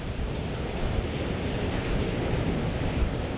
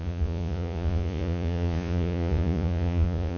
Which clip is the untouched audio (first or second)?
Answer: first